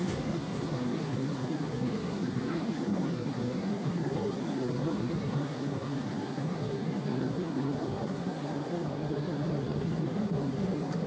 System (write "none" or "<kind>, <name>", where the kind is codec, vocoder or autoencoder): codec, SNAC